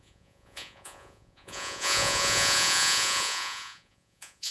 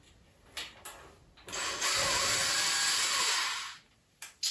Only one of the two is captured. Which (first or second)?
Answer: second